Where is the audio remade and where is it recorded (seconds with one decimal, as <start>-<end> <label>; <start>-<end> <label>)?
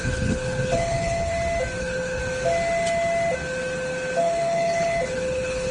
0.0-1.3 remade; 1.3-1.8 recorded; 1.8-2.2 remade; 2.2-4.2 recorded; 4.2-5.7 remade